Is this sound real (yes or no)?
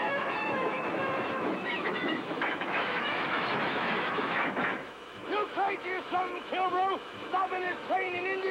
no